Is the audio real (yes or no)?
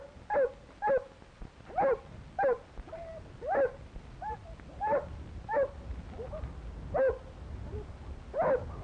yes